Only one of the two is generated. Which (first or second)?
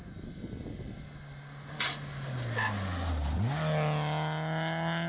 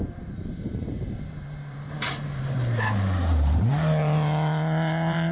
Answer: second